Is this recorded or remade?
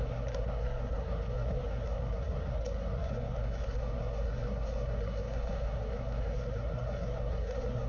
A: remade